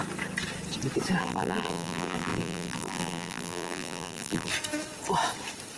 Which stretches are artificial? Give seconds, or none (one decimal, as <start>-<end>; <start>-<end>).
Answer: 1.2-4.5